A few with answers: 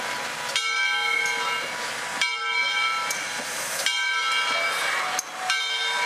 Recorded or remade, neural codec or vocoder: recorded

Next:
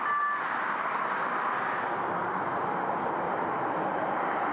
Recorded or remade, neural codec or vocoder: recorded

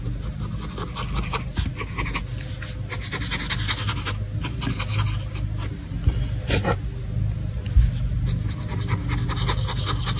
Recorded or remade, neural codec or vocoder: recorded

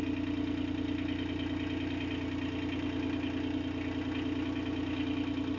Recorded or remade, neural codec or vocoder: recorded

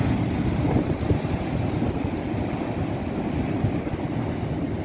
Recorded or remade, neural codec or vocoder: recorded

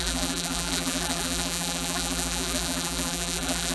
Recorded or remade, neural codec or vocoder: remade, vocoder, BigVGAN v2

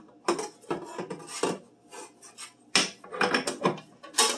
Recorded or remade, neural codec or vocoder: recorded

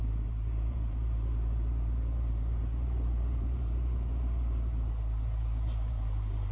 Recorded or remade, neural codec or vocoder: remade, vocoder, BigVGAN v2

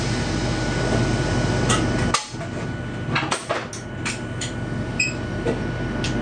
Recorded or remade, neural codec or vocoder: recorded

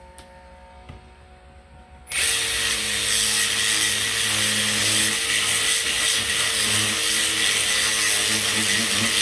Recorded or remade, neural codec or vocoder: recorded